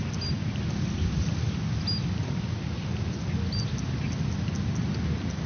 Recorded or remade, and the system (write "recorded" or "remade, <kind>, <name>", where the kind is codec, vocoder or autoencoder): recorded